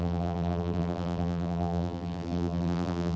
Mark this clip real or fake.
fake